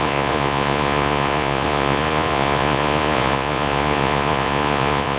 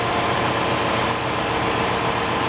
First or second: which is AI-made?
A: first